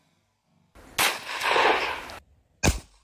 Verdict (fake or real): real